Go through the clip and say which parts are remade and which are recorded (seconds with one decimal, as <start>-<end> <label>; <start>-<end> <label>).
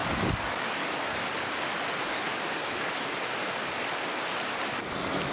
0.0-1.1 remade; 1.1-2.1 recorded; 2.1-2.9 remade; 2.9-5.3 recorded